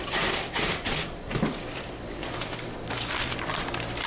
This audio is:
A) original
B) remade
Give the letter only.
B